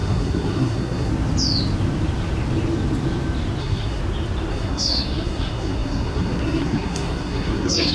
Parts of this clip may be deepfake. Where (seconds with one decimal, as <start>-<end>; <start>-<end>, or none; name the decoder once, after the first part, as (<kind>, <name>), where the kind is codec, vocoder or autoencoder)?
0.0-1.1 (codec, SNAC); 3.6-4.0; 4.5-7.9